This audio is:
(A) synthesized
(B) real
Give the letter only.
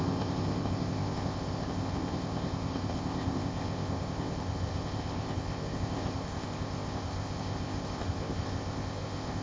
A